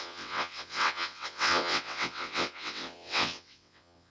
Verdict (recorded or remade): remade